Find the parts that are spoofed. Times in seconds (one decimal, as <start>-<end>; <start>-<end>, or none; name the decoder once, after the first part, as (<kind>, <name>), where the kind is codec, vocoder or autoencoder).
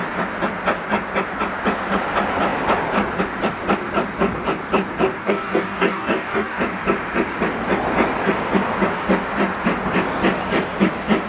5.2-6.6 (codec, DAC)